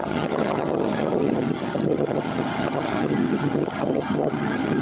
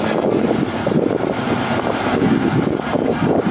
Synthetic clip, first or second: first